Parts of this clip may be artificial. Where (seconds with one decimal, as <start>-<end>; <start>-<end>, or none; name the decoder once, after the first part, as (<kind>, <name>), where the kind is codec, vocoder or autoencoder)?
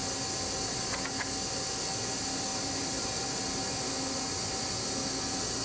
2.5-4.5 (vocoder, BigVGAN v2)